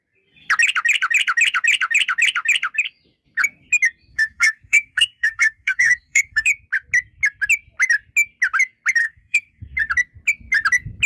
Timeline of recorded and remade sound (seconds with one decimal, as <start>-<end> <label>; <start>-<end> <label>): 0.0-4.1 recorded; 4.1-6.5 remade; 6.5-9.0 recorded; 9.0-9.6 remade; 9.6-11.1 recorded